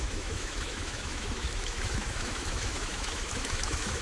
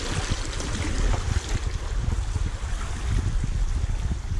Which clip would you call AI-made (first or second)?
first